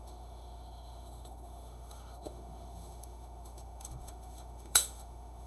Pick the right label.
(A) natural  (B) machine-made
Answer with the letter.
B